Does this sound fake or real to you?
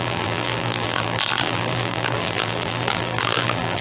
fake